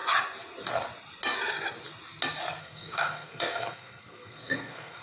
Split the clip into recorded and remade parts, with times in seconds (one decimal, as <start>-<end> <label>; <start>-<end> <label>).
0.0-2.6 recorded; 2.6-5.0 remade